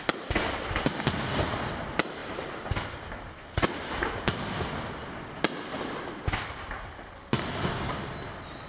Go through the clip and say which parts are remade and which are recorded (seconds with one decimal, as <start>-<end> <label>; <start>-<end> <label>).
0.0-8.7 recorded